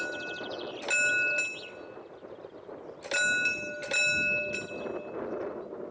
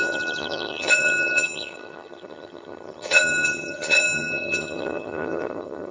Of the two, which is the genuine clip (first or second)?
first